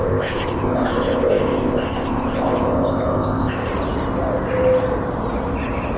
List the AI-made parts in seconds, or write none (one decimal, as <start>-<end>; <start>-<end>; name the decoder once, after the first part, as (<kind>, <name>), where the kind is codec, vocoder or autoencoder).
0.0-3.7 (codec, ZipCodec)